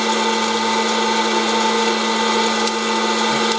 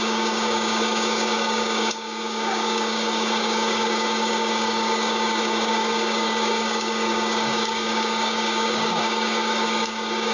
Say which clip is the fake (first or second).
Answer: second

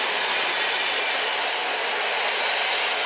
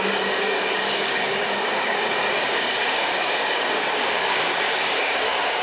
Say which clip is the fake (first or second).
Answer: second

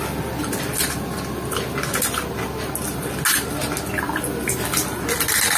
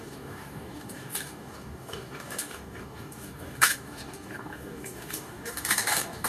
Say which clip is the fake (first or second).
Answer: second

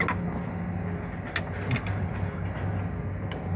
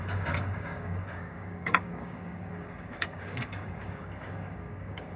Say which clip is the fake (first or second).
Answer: second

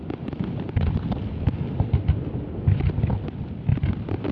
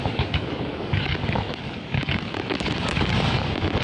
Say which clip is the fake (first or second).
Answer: second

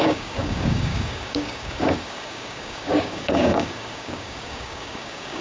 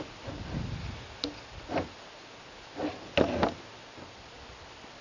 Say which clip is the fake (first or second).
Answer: first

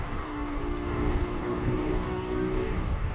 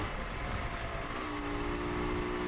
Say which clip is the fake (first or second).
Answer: first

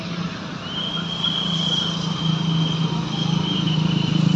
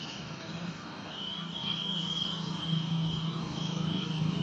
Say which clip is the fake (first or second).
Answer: second